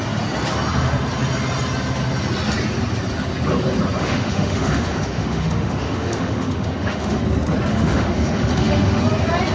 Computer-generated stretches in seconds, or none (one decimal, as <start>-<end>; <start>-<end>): 4.0-7.2; 7.7-9.0